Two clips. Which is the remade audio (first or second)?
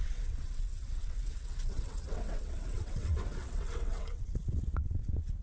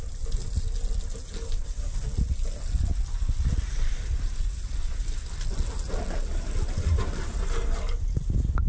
first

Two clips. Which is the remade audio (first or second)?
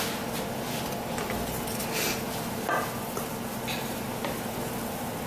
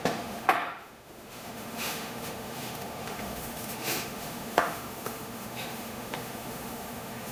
second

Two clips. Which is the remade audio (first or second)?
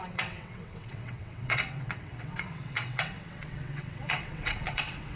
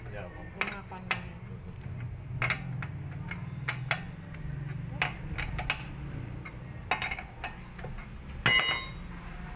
first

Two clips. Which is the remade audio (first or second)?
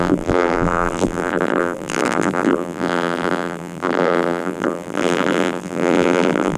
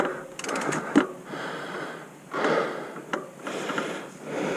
first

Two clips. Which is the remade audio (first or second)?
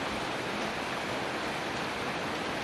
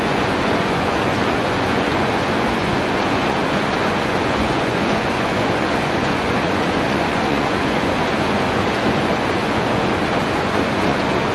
second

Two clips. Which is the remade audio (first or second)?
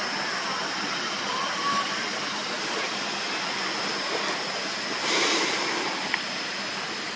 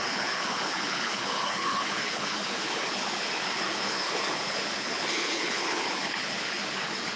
second